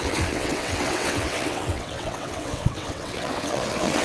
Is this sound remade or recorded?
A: remade